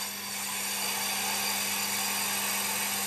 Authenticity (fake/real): real